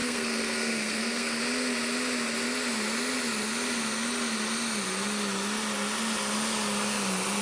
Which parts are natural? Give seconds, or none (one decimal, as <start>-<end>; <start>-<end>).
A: 1.4-7.4